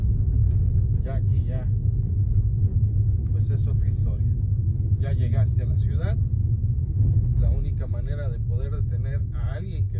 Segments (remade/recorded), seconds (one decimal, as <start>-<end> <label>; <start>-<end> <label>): 0.0-10.0 recorded